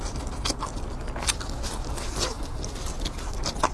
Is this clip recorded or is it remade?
recorded